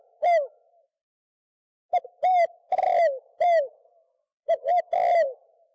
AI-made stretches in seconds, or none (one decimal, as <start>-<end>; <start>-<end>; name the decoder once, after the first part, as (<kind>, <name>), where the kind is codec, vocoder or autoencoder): 4.3-4.8 (vocoder, BigVGAN v2)